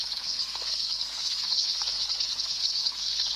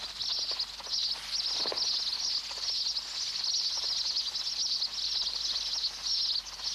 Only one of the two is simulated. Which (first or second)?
first